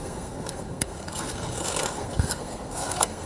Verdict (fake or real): fake